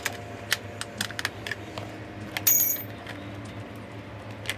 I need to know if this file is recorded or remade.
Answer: recorded